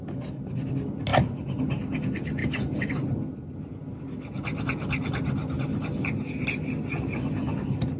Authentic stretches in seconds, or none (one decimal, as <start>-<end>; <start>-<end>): 0.0-8.0